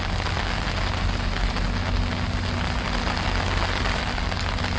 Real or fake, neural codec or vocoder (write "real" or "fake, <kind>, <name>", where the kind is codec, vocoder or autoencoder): real